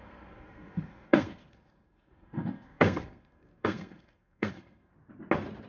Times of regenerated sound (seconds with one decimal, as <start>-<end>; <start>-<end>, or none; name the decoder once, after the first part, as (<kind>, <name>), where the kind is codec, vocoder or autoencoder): 0.0-4.9 (codec, SNAC)